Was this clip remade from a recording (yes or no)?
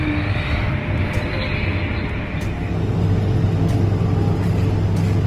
no